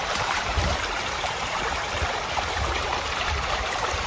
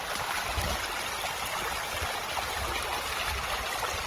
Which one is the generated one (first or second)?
first